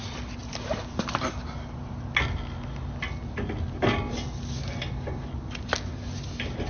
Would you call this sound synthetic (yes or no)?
no